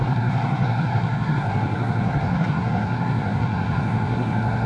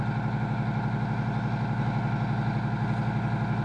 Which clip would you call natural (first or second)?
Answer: second